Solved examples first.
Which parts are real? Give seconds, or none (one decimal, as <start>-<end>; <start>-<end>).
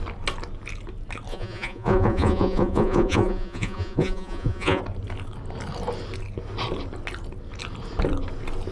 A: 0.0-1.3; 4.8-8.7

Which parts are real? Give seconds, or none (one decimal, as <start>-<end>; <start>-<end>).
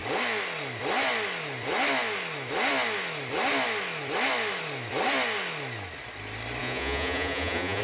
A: 0.0-6.6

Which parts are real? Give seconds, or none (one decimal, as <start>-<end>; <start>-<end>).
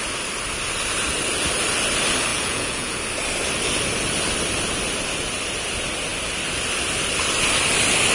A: 0.0-2.3; 3.0-8.1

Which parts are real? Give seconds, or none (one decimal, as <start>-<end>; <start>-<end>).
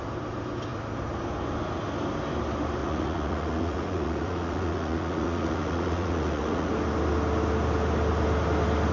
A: 0.0-2.8; 6.7-8.9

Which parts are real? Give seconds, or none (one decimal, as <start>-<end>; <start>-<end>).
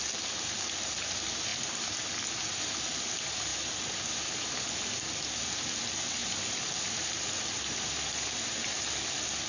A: 0.0-9.5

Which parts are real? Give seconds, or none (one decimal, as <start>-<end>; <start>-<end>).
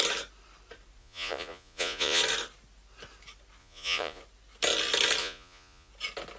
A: 0.0-1.0; 2.2-3.6; 4.2-5.2; 5.9-6.4